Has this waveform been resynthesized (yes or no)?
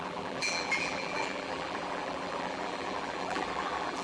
yes